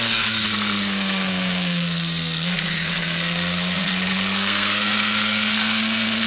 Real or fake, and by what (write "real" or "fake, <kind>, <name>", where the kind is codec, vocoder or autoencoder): fake, codec, SNAC